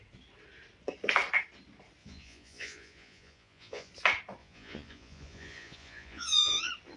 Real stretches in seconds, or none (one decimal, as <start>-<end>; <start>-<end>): 0.0-2.0; 3.9-4.4; 6.6-7.0